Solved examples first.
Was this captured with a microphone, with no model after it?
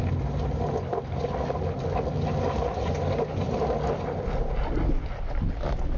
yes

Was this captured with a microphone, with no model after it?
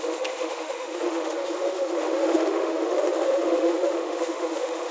no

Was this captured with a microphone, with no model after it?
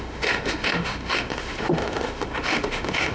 no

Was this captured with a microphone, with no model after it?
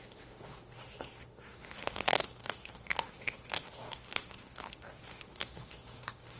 no